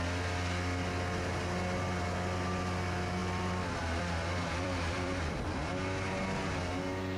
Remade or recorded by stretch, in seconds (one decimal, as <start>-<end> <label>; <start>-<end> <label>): 0.0-3.2 recorded; 3.2-5.7 remade; 5.7-7.2 recorded